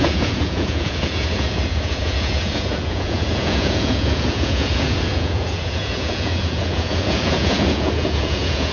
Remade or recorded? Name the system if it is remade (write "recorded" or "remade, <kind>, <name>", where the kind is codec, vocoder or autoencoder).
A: remade, vocoder, Vocos